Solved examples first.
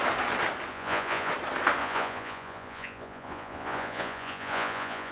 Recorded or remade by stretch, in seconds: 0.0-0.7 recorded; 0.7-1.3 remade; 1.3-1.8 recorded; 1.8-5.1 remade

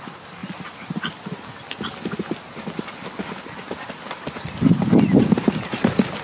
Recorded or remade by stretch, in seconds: 0.0-6.2 recorded

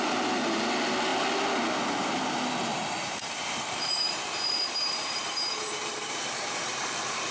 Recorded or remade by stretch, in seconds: 0.0-2.7 recorded; 2.7-7.3 remade

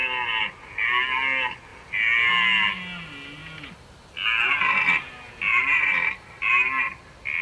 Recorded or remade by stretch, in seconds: 0.0-7.4 recorded

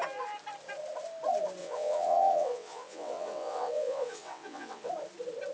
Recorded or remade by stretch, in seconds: 0.0-1.6 recorded; 1.6-4.9 remade; 4.9-5.5 recorded

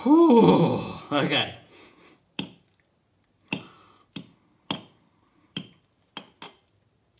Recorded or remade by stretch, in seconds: 0.0-0.4 recorded; 0.4-2.0 remade; 2.0-7.2 recorded

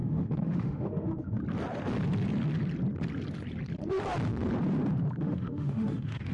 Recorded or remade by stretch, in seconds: 0.0-1.4 remade; 1.4-5.2 recorded; 5.2-6.3 remade